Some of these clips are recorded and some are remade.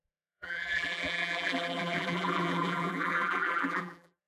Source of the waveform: remade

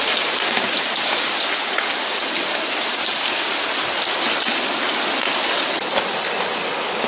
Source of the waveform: recorded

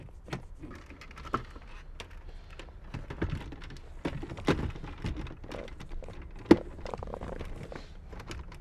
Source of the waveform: recorded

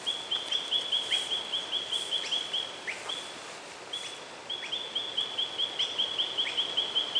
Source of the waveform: recorded